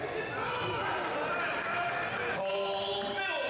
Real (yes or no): yes